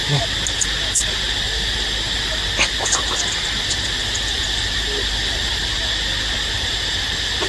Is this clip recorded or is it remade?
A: recorded